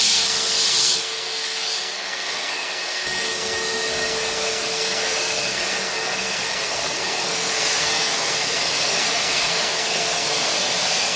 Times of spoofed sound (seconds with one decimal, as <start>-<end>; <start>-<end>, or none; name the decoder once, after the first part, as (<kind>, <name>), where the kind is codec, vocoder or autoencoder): 0.0-11.2 (codec, SNAC)